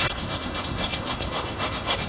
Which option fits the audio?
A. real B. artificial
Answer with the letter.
B